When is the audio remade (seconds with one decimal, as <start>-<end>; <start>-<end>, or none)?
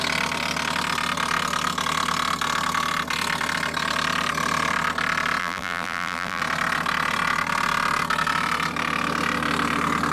5.4-6.4